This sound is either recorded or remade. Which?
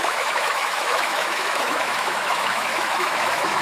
remade